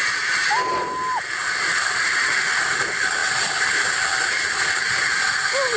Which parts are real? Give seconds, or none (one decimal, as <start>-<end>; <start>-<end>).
0.0-5.8